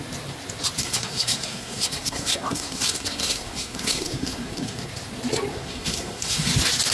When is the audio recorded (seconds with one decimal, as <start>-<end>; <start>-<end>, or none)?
0.0-0.8; 4.9-5.5; 6.5-6.9

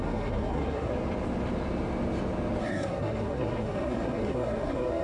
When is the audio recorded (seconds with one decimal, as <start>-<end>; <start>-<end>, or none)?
0.9-2.6

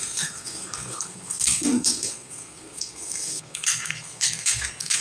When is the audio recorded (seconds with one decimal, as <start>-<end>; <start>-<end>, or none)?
none

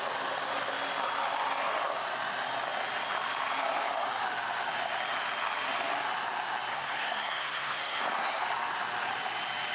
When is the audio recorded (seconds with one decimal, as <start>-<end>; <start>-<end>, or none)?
0.0-6.7; 8.4-9.7

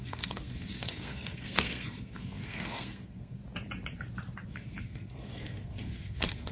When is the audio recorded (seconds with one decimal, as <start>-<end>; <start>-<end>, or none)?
3.4-4.5